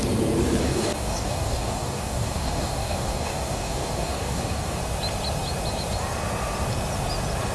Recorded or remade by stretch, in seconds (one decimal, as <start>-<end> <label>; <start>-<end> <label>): 0.0-0.6 recorded; 0.6-4.8 remade; 4.8-7.5 recorded